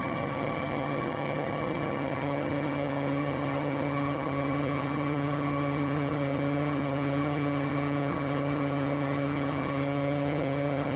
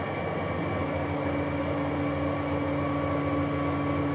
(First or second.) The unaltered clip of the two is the second